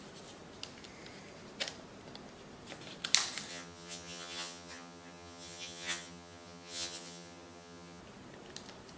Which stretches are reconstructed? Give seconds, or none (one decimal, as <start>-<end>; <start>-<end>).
3.5-8.0